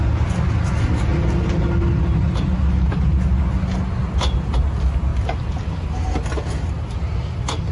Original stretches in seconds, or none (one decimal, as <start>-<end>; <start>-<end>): 0.0-7.7